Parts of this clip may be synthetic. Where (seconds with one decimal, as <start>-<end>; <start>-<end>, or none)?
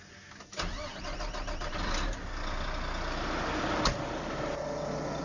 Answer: none